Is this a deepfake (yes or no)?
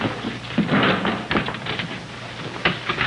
no